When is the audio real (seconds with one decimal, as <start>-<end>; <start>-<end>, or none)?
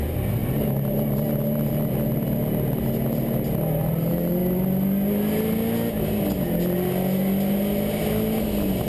0.0-8.9